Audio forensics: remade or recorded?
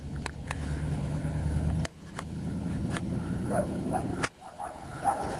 remade